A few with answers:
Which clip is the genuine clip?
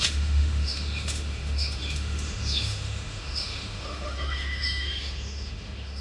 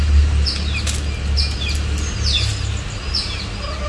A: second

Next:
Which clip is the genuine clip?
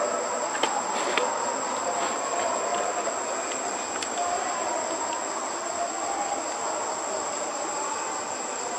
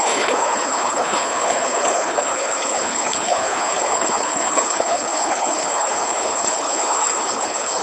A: first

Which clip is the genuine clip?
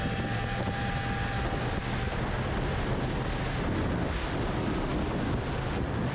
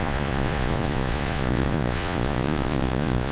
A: first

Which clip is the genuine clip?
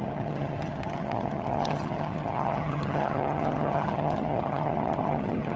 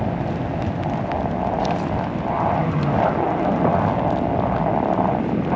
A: second